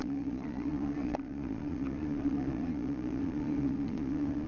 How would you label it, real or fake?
fake